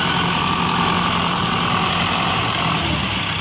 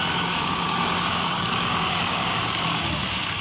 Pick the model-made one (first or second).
second